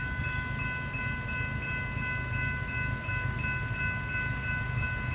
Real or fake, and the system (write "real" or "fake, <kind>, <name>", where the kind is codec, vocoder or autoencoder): real